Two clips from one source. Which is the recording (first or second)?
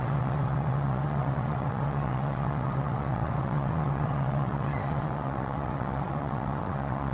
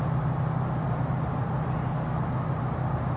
second